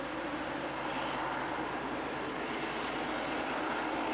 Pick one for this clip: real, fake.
real